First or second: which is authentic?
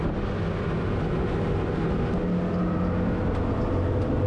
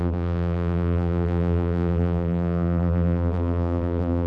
first